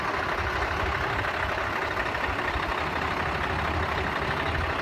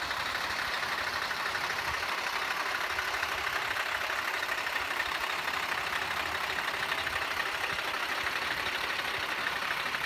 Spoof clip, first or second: second